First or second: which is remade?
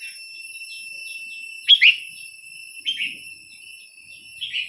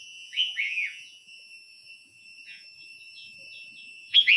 second